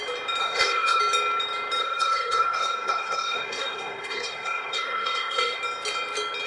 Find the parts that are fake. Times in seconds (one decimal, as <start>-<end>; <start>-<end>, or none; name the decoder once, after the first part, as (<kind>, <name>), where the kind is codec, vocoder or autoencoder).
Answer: 0.4-1.0 (codec, SNAC); 1.8-5.6